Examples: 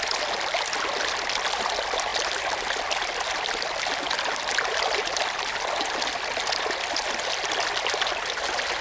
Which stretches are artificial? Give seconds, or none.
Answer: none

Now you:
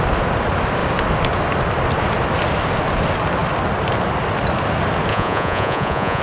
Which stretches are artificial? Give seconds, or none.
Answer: 5.1-6.2 (vocoder, Vocos)

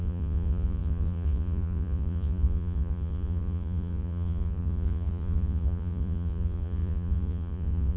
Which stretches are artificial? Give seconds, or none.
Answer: 0.0-8.0 (vocoder, Vocos)

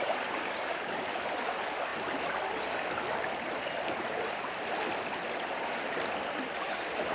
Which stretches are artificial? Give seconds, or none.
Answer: none